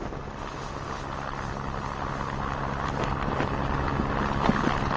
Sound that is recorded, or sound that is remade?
recorded